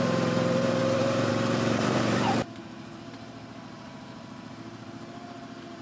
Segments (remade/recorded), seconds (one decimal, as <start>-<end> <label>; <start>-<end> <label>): 0.0-5.8 remade